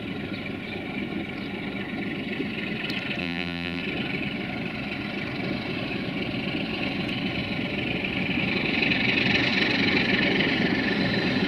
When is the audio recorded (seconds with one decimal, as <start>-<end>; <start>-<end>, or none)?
0.0-3.2; 3.8-11.5